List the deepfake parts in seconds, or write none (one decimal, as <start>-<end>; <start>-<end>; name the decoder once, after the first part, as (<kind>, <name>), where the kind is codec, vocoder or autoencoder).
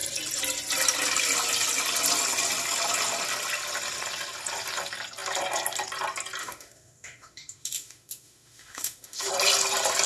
6.4-9.3 (autoencoder, DAC-VAE)